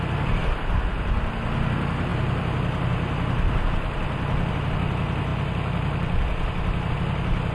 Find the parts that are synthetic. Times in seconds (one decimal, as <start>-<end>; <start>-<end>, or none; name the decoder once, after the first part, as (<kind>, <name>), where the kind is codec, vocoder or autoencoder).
none

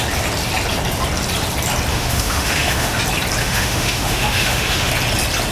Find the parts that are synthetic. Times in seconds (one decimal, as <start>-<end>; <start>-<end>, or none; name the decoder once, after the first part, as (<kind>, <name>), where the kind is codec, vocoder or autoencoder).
1.9-3.0 (autoencoder, DAC-VAE); 3.4-4.9